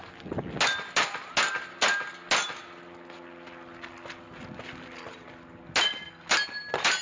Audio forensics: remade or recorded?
recorded